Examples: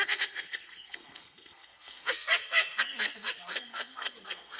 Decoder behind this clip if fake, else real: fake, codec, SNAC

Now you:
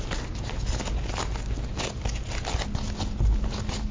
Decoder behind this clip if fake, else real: real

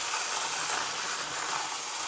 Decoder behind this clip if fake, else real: real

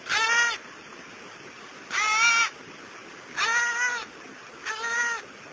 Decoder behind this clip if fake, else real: real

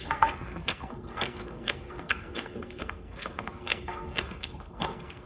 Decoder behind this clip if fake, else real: fake, codec, SNAC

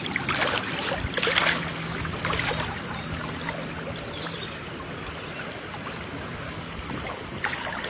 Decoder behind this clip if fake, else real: real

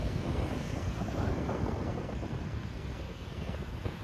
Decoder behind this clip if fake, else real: fake, codec, SNAC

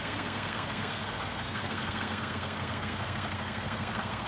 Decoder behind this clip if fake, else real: fake, codec, SNAC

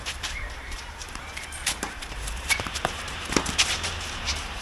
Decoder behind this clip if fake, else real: fake, vocoder, BigVGAN v2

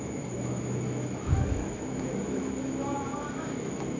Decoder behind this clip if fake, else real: fake, autoencoder, DAC-VAE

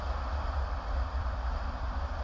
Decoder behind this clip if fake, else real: fake, vocoder, BigVGAN v2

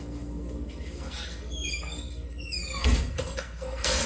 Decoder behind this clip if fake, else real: fake, codec, SNAC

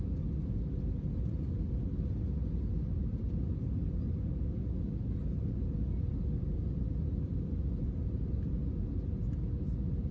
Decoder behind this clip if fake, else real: real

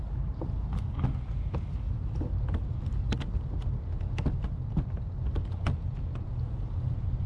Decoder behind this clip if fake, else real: real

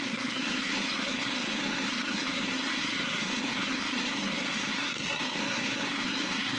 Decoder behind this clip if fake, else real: fake, codec, SNAC